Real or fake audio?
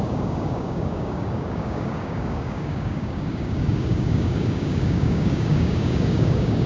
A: fake